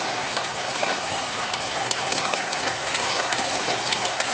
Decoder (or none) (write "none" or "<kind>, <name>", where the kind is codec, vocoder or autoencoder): codec, SNAC